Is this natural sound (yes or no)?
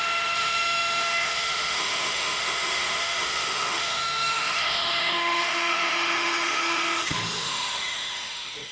no